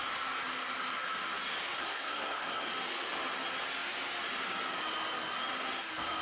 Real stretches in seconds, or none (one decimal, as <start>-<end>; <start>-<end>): 0.0-1.8; 2.7-6.2